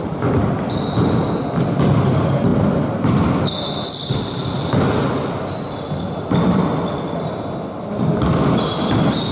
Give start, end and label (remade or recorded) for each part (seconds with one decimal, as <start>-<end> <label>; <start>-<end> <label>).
0.0-9.3 recorded

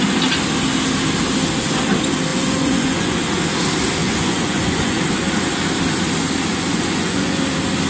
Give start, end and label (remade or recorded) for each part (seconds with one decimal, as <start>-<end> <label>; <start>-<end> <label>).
0.0-2.3 recorded; 2.3-3.2 remade; 3.2-4.0 recorded; 4.0-5.0 remade; 5.0-6.5 recorded; 6.5-7.4 remade; 7.4-7.9 recorded